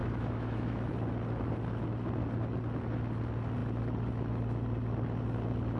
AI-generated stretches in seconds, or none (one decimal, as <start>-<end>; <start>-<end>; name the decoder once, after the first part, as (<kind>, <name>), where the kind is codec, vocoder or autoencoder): 0.0-0.9 (autoencoder, DAC-VAE)